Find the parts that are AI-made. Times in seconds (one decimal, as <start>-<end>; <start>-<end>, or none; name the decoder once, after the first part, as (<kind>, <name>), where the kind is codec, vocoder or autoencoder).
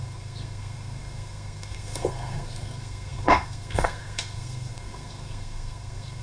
0.0-6.2 (codec, SNAC)